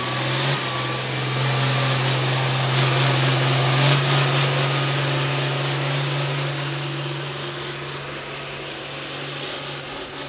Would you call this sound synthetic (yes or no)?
no